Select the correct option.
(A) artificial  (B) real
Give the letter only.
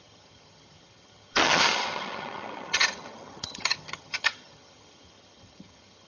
A